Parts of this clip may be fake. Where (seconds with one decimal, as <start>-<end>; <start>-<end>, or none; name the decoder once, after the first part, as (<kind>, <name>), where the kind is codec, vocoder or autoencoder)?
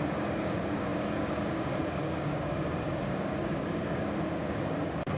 0.0-5.2 (codec, DAC)